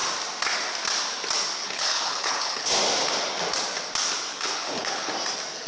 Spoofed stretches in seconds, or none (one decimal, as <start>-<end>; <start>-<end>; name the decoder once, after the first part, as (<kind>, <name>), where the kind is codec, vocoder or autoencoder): 1.6-2.7 (codec, HILCodec); 4.3-5.1